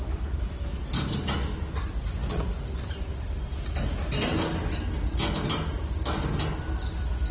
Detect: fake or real real